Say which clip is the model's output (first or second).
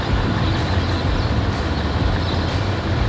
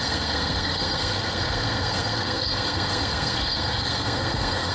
second